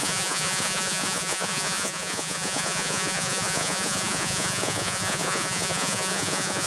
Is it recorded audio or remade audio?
remade